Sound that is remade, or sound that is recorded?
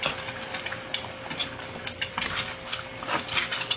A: recorded